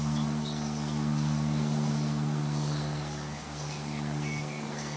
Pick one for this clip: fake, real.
fake